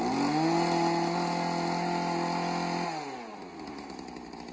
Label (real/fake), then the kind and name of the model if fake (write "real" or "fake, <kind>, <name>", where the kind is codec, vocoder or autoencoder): real